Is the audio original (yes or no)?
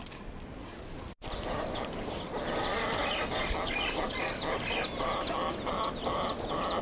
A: yes